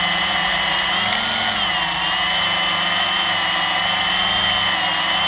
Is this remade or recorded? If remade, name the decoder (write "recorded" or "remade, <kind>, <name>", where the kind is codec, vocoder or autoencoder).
recorded